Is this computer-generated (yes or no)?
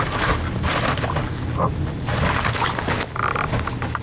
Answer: no